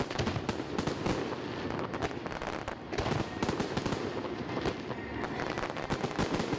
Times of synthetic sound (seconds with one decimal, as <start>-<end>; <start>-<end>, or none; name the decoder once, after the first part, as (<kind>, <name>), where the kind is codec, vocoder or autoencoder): none